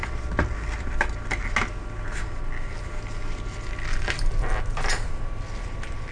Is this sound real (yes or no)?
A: yes